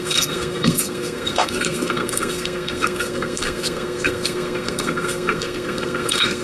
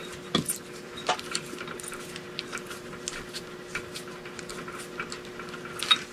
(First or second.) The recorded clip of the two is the second